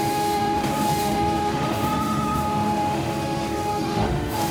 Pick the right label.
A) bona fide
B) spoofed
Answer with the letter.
B